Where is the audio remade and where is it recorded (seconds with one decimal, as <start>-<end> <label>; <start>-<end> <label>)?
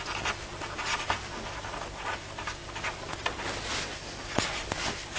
0.0-5.2 recorded